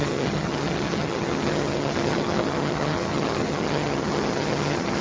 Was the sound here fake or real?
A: fake